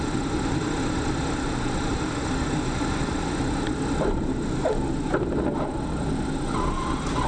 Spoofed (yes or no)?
no